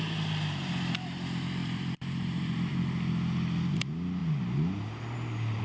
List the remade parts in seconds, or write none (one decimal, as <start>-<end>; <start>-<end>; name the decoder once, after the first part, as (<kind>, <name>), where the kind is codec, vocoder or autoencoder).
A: 1.6-2.7 (vocoder, BigVGAN v2)